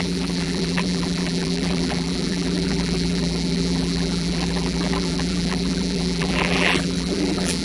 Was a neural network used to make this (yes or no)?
yes